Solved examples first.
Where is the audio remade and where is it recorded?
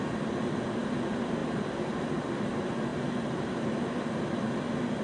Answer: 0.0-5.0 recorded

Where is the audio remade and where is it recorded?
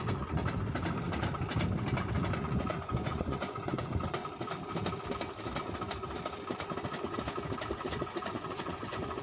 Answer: 0.0-0.4 remade; 0.4-2.3 recorded; 2.3-4.2 remade; 4.2-7.9 recorded; 7.9-9.2 remade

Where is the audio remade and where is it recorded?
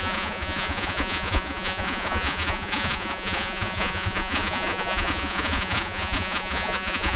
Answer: 0.0-7.2 remade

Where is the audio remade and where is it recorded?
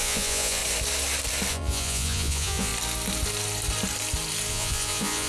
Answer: 0.0-0.6 remade; 0.6-1.5 recorded; 1.5-2.7 remade; 2.7-4.5 recorded; 4.5-5.3 remade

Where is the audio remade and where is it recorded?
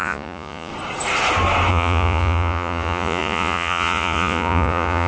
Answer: 0.0-0.7 remade; 0.7-1.7 recorded; 1.7-5.1 remade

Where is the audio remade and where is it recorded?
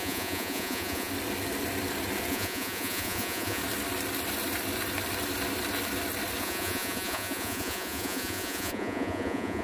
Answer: 0.0-1.1 remade; 1.1-2.3 recorded; 2.3-3.6 remade; 3.6-6.4 recorded; 6.4-9.6 remade